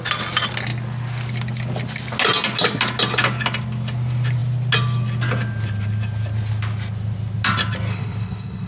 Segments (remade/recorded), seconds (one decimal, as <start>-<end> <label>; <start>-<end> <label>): 0.0-7.9 recorded; 7.9-8.7 remade